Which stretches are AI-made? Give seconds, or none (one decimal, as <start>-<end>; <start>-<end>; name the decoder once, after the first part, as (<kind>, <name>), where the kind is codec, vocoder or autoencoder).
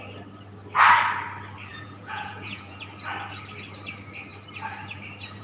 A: 1.7-2.8 (vocoder, Vocos)